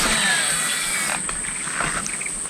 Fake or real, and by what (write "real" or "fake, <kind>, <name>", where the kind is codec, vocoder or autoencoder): real